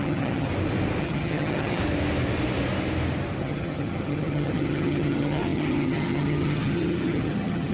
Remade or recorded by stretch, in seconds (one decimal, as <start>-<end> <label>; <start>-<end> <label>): 0.0-0.5 remade; 0.5-1.0 recorded; 1.0-1.8 remade; 1.8-3.4 recorded; 3.4-7.7 remade